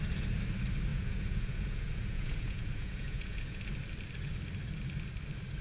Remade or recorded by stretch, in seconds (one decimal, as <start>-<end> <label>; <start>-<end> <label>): 0.0-0.9 recorded; 0.9-3.6 remade; 3.6-5.6 recorded